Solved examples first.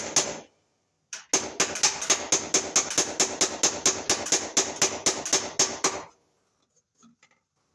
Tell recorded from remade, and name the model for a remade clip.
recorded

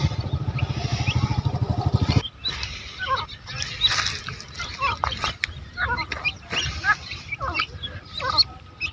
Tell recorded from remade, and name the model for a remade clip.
recorded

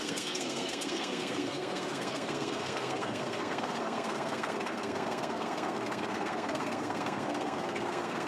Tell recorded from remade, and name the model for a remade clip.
remade, codec, SNAC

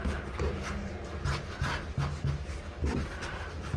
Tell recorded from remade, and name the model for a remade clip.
recorded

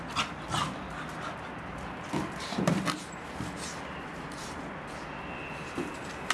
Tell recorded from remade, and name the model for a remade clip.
recorded